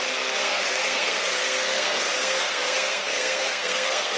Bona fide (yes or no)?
no